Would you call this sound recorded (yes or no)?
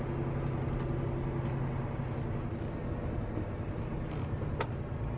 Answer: yes